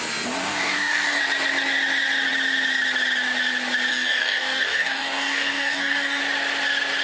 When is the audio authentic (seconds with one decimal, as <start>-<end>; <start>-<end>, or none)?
0.0-0.4; 1.2-3.9; 6.2-7.0